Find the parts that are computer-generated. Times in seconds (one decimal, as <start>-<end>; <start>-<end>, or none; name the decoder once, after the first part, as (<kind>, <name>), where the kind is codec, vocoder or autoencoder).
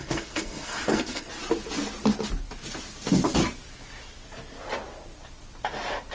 0.0-1.3 (codec, SNAC)